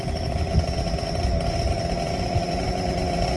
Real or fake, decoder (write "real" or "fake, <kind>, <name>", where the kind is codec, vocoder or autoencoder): fake, vocoder, BigVGAN v2